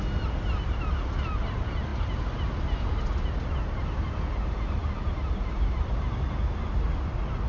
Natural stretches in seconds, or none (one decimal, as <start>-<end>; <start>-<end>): 0.0-4.8; 5.9-7.5